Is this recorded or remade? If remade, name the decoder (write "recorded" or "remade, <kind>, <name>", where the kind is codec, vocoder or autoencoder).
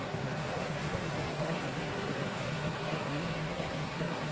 remade, codec, SNAC